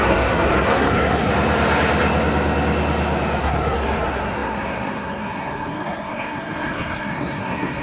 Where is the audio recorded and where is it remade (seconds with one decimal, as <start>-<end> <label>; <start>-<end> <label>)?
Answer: 0.0-1.3 remade; 1.3-3.4 recorded; 3.4-7.8 remade